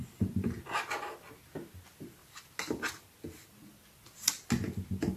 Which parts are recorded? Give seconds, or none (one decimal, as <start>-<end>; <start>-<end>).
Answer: 0.0-5.2